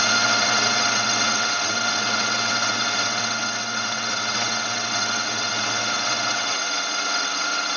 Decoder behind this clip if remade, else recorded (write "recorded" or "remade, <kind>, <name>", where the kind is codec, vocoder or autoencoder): remade, vocoder, WaveNeXt